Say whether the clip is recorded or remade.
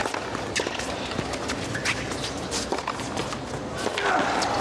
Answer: recorded